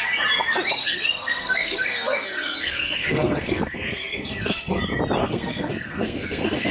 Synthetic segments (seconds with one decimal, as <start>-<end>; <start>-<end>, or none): 0.8-4.8; 5.2-6.7